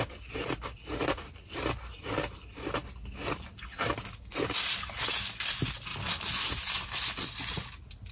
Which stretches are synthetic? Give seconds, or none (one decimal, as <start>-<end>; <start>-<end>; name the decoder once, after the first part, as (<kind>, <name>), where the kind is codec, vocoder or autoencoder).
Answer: none